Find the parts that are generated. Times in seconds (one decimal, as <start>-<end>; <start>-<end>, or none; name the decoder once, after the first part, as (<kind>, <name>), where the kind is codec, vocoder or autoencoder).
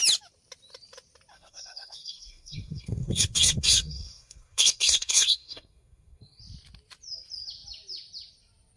1.3-6.4 (codec, SNAC)